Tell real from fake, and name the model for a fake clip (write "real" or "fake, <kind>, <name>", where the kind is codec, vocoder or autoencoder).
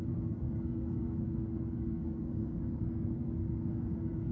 fake, codec, SNAC